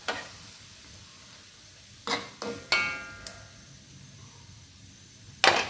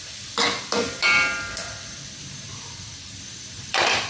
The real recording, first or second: first